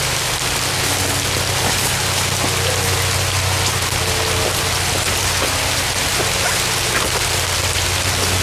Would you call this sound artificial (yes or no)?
no